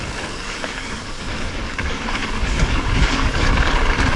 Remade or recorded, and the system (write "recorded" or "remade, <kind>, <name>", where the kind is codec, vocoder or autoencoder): remade, codec, DAC